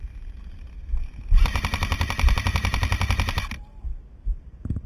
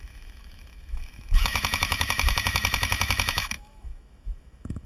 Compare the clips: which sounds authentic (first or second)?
first